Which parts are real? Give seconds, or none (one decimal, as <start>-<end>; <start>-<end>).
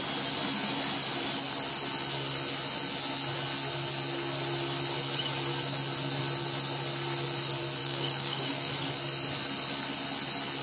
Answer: 0.0-7.8; 8.7-10.6